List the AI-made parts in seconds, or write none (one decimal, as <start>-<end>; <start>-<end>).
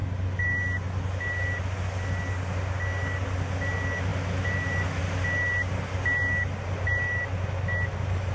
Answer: none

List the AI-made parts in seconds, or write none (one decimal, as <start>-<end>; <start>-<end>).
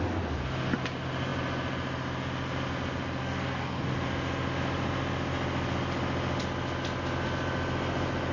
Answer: 3.2-3.8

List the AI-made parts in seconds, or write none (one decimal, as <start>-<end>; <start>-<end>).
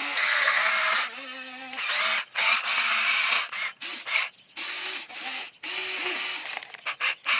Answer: 0.0-0.7